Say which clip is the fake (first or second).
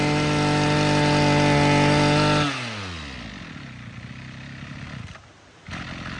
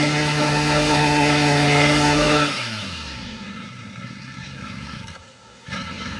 second